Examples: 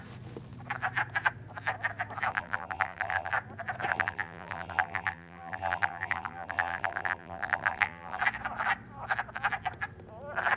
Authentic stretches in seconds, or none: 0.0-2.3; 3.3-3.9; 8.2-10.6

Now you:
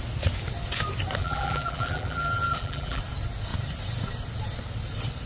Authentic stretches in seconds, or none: 0.0-1.2; 3.0-5.3

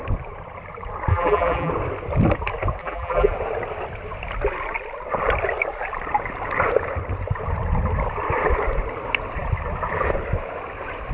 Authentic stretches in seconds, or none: 0.0-1.1; 1.7-2.8; 3.3-11.1

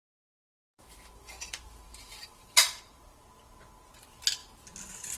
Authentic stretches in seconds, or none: 0.0-0.4; 2.8-5.2

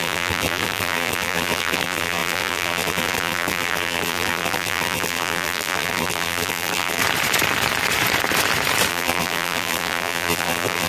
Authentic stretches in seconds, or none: 7.0-8.9

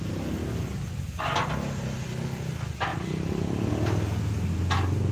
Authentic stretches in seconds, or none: 0.0-5.1

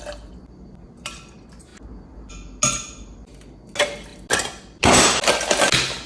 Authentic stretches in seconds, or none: 0.0-6.1

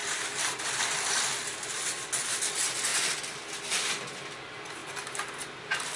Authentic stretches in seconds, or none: 0.8-6.0